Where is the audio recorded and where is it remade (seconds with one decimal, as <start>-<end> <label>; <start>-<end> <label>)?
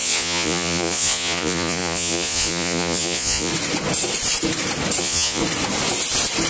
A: 0.0-3.5 remade; 3.5-5.0 recorded; 5.0-5.4 remade; 5.4-6.5 recorded